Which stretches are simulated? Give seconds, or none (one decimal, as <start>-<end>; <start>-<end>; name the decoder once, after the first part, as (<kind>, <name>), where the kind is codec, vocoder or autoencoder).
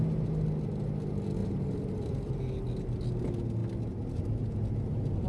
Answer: 1.4-2.3 (vocoder, BigVGAN v2)